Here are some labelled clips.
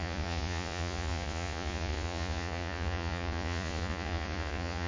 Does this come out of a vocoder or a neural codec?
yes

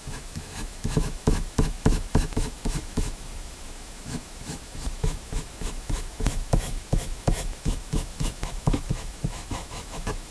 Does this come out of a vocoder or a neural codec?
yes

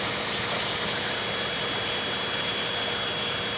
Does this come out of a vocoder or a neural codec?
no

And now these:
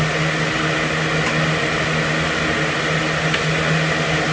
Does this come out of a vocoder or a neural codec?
no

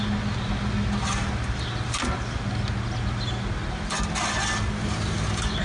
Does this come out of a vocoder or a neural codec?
no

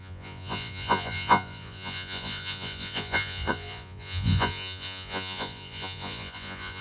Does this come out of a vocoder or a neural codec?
yes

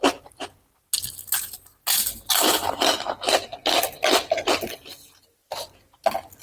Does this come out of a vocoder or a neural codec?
no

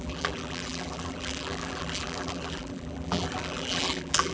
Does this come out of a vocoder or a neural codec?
yes